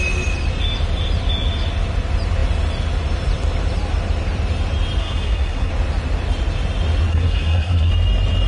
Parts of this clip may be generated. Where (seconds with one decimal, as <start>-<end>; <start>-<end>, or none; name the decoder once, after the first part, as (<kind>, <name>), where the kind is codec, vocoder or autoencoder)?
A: 5.0-5.7 (codec, SNAC); 7.1-7.9